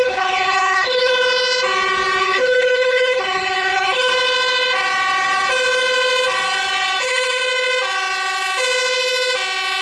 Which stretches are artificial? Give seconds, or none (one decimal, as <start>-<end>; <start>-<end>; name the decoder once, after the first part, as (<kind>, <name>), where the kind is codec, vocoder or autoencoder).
0.0-1.1 (codec, HILCodec); 2.2-4.1; 7.0-7.4